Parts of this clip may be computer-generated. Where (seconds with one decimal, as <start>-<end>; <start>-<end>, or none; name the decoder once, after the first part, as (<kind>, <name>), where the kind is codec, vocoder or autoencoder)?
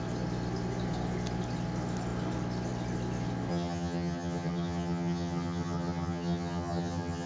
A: 3.5-7.3 (vocoder, HiFi-GAN)